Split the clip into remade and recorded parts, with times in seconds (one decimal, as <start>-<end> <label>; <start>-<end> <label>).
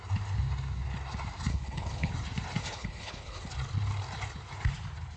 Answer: 0.0-1.5 recorded; 1.5-2.1 remade; 2.1-2.6 recorded; 2.6-3.5 remade; 3.5-5.2 recorded